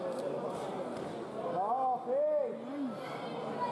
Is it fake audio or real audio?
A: real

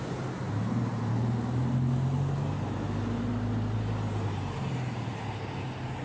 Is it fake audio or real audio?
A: real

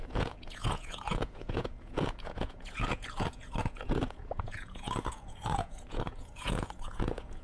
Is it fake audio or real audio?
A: fake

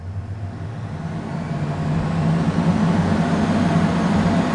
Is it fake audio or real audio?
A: real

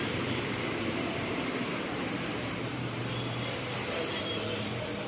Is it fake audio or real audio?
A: fake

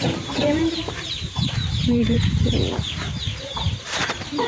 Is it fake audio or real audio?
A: fake